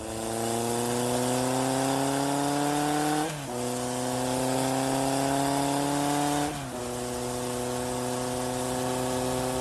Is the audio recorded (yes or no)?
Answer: yes